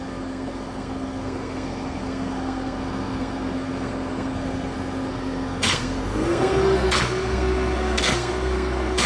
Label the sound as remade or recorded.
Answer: remade